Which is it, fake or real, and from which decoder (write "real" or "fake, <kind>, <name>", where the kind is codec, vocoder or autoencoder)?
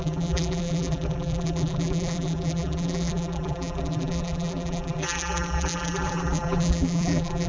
fake, vocoder, BigVGAN v2